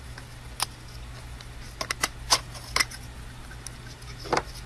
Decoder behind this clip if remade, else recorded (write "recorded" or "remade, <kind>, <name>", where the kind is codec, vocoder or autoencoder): recorded